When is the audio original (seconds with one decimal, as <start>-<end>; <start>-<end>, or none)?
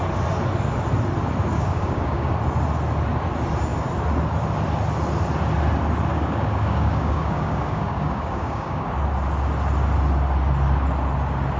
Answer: 0.0-1.5; 2.3-6.1; 8.9-11.6